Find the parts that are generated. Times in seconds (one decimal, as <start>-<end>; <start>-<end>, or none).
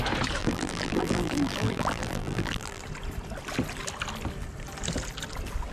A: 0.4-2.8